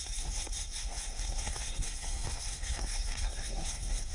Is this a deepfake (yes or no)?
yes